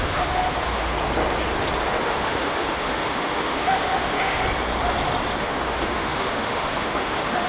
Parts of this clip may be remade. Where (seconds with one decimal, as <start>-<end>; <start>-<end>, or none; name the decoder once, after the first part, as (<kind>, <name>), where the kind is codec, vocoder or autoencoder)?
0.0-0.9 (autoencoder, DAC-VAE); 2.0-4.4; 5.4-7.5